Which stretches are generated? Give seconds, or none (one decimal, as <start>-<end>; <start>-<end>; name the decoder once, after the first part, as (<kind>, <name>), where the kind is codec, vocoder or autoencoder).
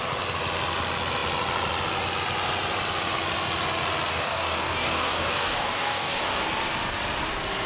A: 4.1-6.4 (codec, DAC)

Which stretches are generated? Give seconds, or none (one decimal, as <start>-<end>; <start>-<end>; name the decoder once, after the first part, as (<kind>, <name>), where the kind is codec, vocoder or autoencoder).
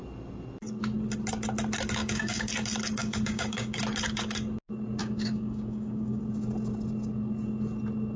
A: 2.0-2.5 (codec, DAC); 3.0-3.8; 5.0-6.2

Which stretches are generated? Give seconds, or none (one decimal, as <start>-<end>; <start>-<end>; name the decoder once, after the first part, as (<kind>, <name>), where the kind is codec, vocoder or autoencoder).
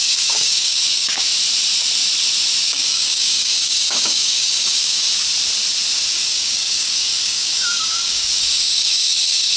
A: 0.0-1.3 (codec, DAC); 2.6-5.0; 6.1-9.6